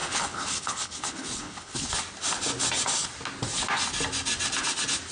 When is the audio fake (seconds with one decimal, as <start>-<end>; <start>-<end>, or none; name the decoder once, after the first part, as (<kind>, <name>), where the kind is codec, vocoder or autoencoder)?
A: 0.0-1.9 (codec, HILCodec)